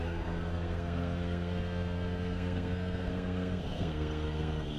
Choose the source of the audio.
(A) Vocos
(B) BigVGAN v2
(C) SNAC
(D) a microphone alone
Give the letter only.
C